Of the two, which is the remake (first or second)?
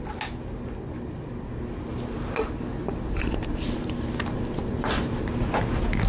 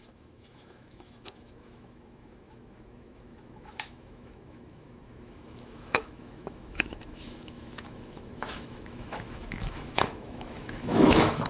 second